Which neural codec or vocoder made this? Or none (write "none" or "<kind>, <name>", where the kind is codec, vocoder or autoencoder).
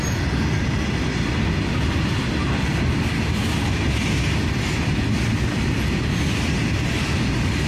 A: none